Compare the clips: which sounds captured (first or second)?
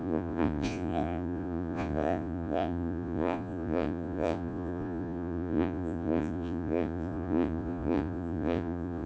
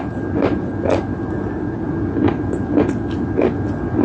second